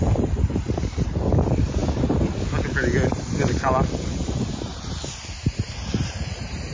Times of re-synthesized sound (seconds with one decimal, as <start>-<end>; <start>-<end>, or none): 0.0-1.8; 3.1-4.7; 6.0-6.7